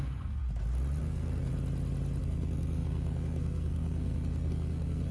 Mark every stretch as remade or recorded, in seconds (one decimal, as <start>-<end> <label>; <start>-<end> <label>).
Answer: 0.0-0.4 remade; 0.4-1.0 recorded; 1.0-1.5 remade; 1.5-2.2 recorded; 2.2-5.1 remade